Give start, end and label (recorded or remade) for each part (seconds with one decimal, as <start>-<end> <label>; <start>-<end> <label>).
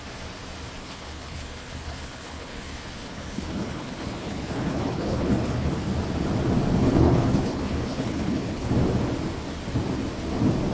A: 0.0-0.8 recorded; 0.8-5.7 remade; 5.7-6.8 recorded; 6.8-8.7 remade; 8.7-10.7 recorded